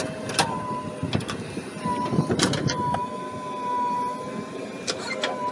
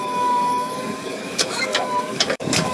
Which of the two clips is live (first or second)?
first